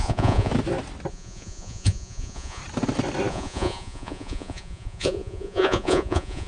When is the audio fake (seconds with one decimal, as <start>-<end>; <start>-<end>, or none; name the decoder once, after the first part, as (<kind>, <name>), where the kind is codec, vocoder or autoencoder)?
0.0-0.5 (vocoder, Vocos); 1.1-2.6; 3.3-6.5